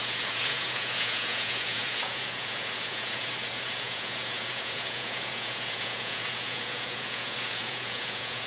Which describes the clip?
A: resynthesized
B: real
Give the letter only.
A